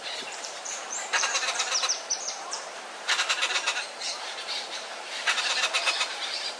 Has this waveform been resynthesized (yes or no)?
yes